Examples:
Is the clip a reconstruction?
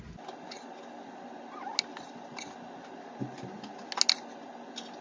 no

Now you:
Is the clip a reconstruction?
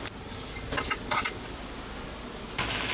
no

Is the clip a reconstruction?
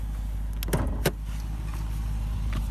no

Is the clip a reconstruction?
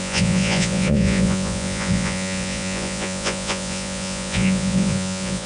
yes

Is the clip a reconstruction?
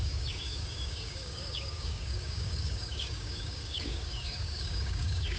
yes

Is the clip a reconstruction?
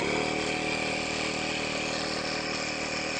no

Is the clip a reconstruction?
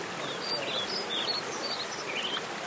no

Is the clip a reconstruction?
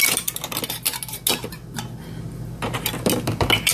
no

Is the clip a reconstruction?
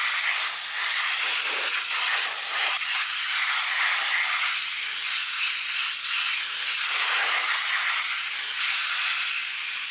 no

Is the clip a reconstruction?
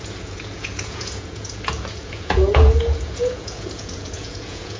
yes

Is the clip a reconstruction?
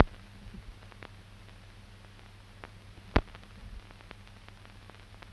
no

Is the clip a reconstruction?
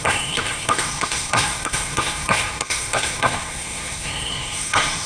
yes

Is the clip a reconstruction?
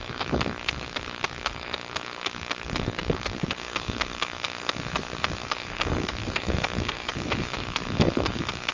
yes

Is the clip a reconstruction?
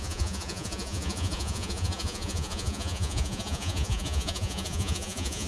yes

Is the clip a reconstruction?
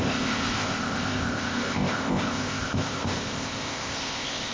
yes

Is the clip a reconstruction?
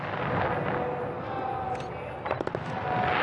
no